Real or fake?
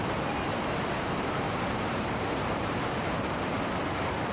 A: fake